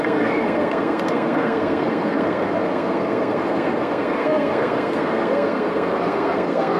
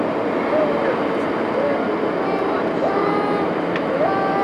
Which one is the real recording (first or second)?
second